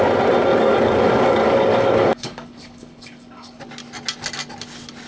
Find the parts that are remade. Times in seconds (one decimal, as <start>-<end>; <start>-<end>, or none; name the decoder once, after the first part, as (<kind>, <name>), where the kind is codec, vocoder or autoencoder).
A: 0.5-3.6 (codec, DAC)